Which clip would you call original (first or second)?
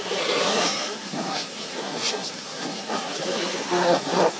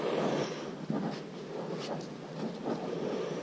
second